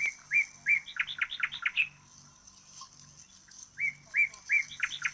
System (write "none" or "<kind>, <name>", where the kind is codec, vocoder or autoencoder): none